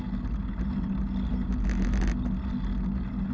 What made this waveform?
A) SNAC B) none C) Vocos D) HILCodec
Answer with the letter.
B